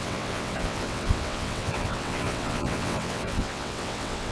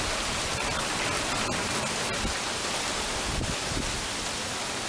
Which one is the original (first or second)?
second